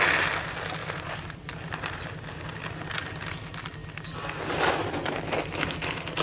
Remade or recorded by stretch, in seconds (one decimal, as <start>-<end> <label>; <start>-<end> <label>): 0.0-0.8 recorded; 0.8-1.5 remade; 1.5-6.2 recorded